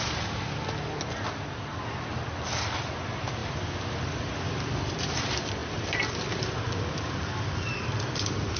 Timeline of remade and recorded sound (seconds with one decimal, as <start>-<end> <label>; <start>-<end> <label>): 0.0-3.4 recorded; 3.4-4.2 remade; 4.2-5.6 recorded; 5.6-7.3 remade; 7.3-8.6 recorded